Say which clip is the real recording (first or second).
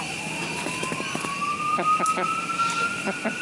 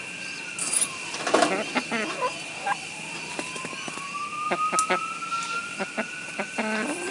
second